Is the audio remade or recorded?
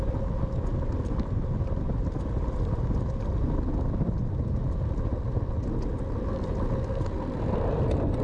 recorded